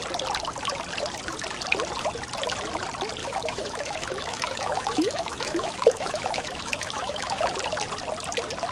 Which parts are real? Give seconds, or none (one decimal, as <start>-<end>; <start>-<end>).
0.0-3.2; 7.4-8.7